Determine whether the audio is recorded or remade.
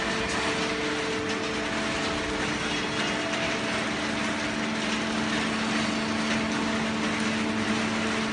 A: recorded